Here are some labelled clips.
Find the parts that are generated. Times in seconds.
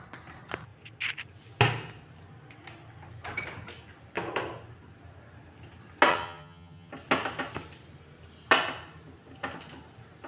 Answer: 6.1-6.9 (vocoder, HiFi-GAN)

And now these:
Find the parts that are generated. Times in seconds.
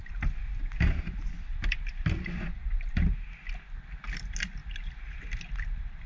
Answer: none